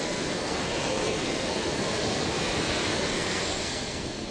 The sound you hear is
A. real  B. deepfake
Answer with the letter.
B